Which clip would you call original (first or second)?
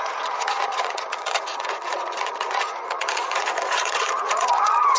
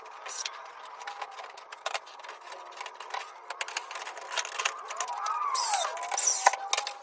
second